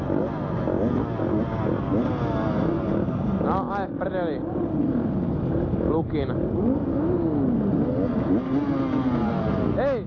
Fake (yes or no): no